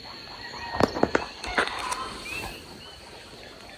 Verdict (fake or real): real